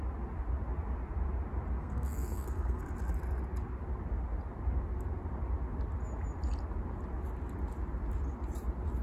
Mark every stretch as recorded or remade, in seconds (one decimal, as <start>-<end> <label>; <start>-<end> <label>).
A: 0.0-1.8 recorded; 1.8-2.8 remade; 2.8-9.0 recorded